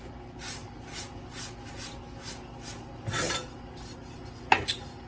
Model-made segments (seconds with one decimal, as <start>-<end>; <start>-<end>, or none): none